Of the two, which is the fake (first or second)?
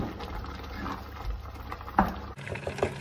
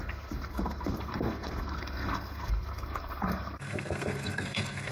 second